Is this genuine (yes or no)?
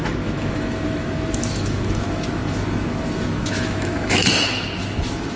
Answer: no